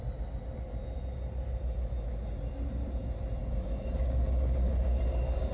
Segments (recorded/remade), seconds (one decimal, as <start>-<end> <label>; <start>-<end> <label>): 0.0-3.4 recorded; 3.4-5.5 remade